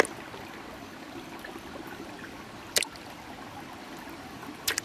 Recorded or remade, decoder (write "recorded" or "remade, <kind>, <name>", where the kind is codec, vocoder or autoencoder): recorded